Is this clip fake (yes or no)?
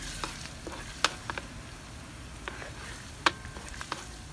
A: no